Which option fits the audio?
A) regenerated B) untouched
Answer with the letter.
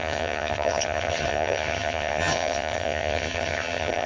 A